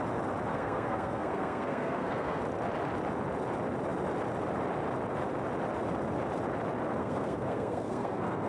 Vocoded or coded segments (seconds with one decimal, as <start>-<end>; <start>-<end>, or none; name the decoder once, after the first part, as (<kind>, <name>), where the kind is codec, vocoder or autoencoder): 0.5-2.4 (codec, SNAC); 7.0-8.5